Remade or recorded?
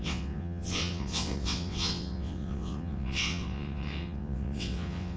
remade